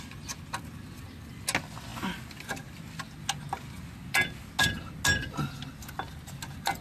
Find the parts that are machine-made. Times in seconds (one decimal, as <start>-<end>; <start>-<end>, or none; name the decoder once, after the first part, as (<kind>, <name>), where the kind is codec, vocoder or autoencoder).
none